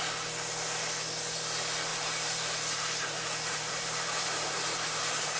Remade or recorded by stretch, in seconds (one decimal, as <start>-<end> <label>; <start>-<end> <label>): 0.0-1.9 recorded; 1.9-5.4 remade